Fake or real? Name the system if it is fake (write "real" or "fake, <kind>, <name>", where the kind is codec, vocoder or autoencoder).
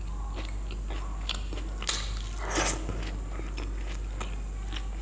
real